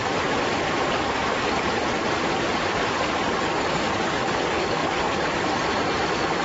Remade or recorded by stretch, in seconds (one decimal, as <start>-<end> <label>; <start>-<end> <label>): 0.0-2.7 recorded; 2.7-4.8 remade; 4.8-6.4 recorded